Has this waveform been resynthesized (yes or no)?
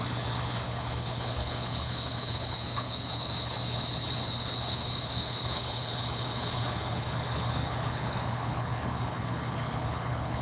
yes